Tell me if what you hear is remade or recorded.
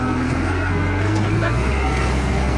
remade